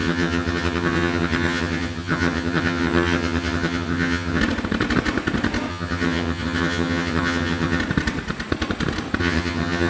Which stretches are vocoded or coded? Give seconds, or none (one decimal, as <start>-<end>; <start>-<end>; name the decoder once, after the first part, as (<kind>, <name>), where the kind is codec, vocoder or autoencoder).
0.0-4.4 (vocoder, HiFi-GAN); 5.7-7.8; 9.2-9.9